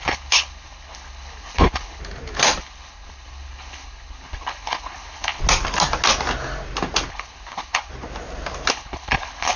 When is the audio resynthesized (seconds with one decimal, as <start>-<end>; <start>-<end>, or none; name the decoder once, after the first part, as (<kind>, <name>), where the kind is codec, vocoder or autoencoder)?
0.0-2.0 (codec, HILCodec); 2.6-5.4; 7.1-7.9; 8.7-9.6